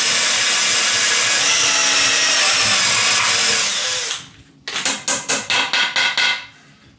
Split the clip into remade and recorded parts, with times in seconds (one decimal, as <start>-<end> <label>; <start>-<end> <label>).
0.0-7.0 recorded